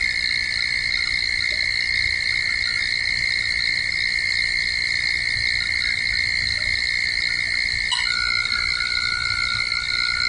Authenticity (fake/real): real